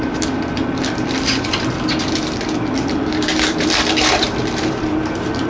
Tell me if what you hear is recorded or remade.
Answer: remade